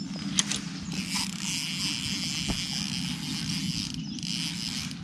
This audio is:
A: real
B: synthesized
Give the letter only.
A